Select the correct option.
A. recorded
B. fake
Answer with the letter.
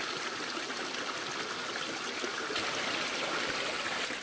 A